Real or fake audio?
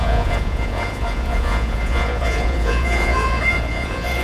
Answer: fake